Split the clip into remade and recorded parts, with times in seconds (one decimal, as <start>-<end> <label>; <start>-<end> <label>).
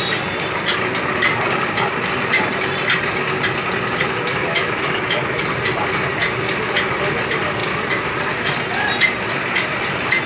0.0-4.3 recorded; 4.3-5.4 remade; 5.4-10.3 recorded